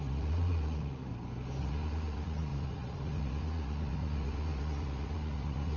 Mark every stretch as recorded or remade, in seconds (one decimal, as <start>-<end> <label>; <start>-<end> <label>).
0.0-1.1 remade; 1.1-1.6 recorded; 1.6-5.8 remade